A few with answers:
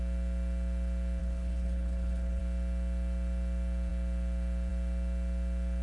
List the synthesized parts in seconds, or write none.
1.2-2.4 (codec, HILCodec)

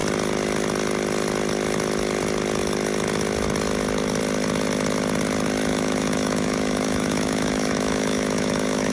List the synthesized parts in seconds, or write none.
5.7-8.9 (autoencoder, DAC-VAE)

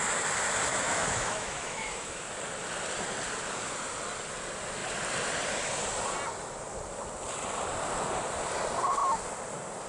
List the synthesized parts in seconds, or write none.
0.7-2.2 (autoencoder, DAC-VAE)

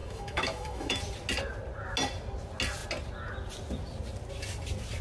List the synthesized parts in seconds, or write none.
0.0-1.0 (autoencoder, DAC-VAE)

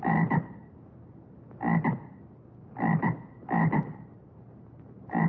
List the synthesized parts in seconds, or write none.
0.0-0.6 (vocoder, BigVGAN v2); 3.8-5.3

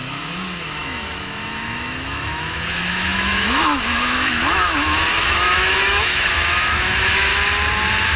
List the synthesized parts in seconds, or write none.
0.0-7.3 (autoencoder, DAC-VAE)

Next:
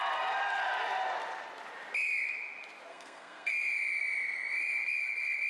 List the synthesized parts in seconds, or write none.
2.9-3.5 (codec, SNAC)

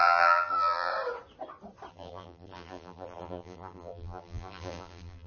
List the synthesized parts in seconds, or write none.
0.0-0.9 (vocoder, BigVGAN v2); 1.9-5.3